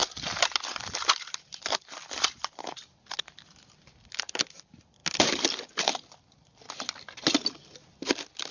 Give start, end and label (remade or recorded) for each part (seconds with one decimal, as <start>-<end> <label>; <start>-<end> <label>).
0.0-8.5 recorded